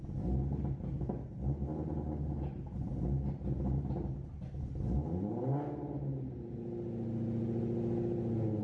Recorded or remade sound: recorded